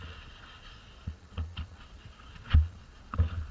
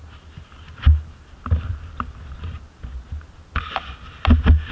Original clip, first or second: second